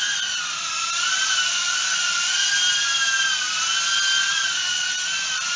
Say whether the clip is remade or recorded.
recorded